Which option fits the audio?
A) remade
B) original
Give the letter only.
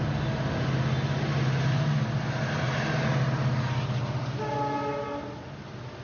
B